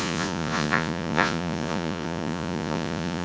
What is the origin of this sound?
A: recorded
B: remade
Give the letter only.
B